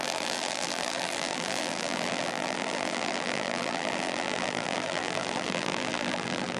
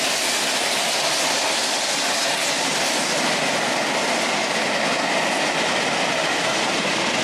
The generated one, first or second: first